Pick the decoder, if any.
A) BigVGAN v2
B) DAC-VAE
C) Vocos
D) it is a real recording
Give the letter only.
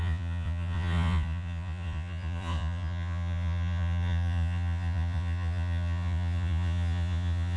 C